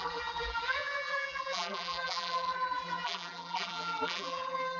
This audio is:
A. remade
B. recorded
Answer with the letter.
A